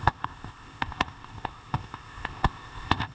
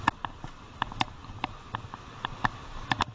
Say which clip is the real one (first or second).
second